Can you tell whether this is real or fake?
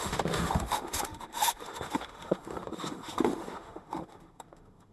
fake